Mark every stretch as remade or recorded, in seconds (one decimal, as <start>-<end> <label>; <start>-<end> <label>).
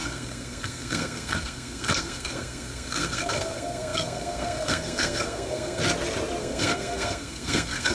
0.0-5.8 remade; 5.8-6.4 recorded; 6.4-7.9 remade